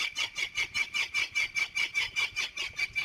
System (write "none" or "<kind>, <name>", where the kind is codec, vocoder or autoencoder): none